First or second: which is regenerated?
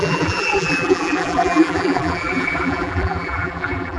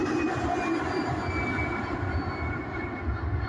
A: first